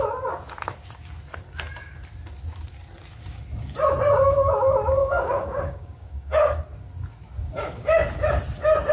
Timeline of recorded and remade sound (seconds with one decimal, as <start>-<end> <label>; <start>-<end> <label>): 0.0-5.0 recorded; 5.0-6.6 remade; 6.6-8.9 recorded